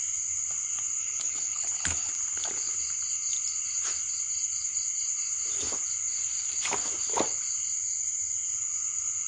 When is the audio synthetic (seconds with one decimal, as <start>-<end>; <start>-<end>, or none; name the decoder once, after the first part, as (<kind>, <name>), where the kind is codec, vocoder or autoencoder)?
1.0-2.1 (codec, HILCodec)